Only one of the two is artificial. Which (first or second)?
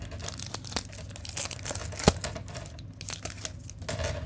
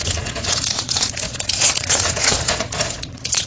second